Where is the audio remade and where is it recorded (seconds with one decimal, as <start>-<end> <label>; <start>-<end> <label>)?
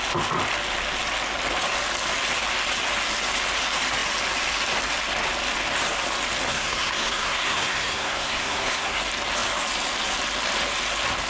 0.0-6.5 recorded; 6.5-9.0 remade; 9.0-11.3 recorded